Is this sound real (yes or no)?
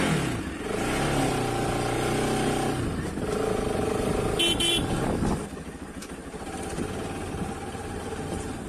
yes